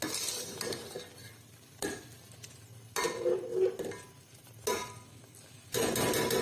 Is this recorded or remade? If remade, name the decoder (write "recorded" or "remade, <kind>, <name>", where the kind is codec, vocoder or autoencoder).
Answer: recorded